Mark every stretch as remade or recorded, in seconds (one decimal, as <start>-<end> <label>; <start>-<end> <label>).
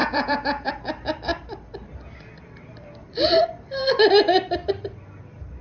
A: 0.0-0.7 remade; 0.7-5.6 recorded